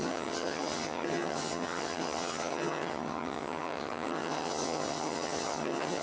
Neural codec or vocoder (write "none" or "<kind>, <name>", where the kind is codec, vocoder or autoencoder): vocoder, HiFi-GAN